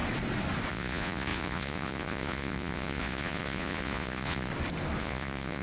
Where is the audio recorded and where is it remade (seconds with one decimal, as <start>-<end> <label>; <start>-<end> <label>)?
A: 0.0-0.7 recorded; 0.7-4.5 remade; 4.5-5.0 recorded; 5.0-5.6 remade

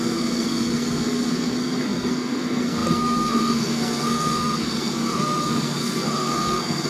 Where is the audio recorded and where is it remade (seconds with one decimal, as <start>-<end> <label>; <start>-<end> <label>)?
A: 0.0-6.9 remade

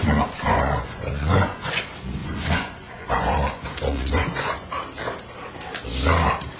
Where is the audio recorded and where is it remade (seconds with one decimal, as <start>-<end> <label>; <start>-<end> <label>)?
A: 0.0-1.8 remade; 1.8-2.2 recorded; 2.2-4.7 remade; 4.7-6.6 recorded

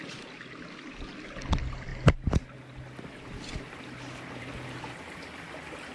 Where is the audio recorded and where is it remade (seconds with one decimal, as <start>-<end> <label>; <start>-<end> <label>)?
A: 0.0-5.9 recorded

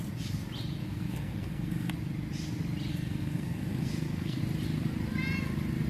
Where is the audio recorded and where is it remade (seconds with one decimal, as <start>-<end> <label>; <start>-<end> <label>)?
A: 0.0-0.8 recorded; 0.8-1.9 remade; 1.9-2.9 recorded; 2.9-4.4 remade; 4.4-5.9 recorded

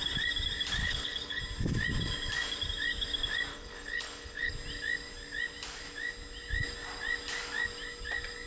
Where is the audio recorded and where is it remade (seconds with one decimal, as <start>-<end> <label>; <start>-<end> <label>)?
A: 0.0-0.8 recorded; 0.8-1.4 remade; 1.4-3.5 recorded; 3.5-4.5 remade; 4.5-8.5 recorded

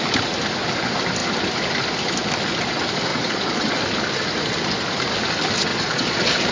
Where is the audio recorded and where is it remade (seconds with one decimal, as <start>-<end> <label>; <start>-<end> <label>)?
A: 0.0-3.1 recorded; 3.1-3.8 remade; 3.8-5.7 recorded; 5.7-6.5 remade

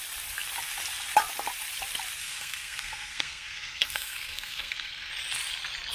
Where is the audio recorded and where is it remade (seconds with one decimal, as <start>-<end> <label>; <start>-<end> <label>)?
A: 0.0-2.2 recorded; 2.2-5.1 remade; 5.1-5.9 recorded